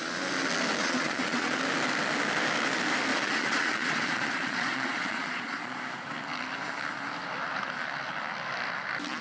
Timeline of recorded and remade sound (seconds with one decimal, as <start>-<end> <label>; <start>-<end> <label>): 0.0-0.8 recorded; 0.8-1.6 remade; 1.6-3.1 recorded; 3.1-5.8 remade; 5.8-9.2 recorded